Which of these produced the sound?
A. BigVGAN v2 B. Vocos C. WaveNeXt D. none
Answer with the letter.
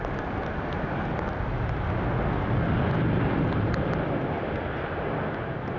D